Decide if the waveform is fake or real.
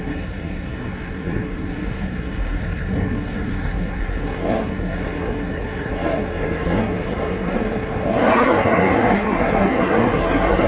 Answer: fake